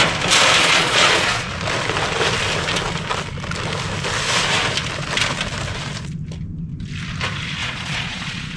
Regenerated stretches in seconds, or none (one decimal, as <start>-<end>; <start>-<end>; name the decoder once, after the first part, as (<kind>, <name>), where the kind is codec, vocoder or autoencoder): 0.6-1.5 (vocoder, Vocos); 7.6-8.6